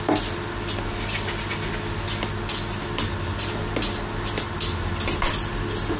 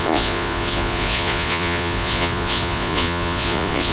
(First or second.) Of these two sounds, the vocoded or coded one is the second